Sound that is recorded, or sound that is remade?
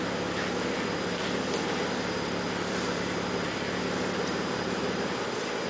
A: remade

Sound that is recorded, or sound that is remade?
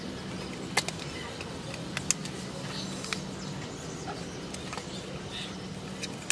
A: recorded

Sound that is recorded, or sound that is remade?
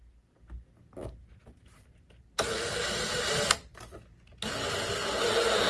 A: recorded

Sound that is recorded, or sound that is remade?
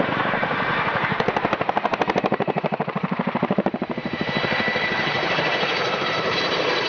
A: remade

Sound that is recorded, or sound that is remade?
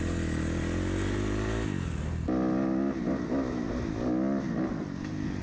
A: recorded